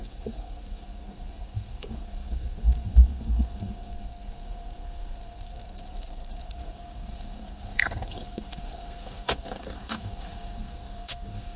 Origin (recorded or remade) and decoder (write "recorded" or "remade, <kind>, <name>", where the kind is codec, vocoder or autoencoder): remade, codec, SNAC